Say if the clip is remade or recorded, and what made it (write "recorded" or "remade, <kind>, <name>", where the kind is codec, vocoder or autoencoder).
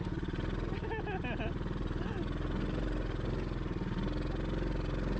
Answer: recorded